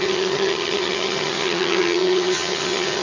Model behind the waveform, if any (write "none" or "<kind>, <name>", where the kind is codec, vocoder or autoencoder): vocoder, HiFi-GAN